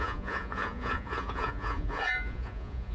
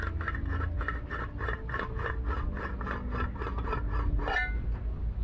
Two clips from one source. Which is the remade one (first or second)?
first